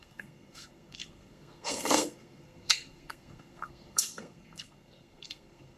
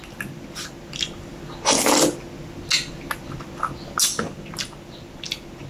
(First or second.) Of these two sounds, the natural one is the second